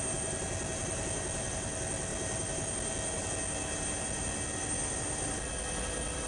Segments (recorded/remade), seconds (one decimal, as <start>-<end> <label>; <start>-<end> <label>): 0.0-6.3 recorded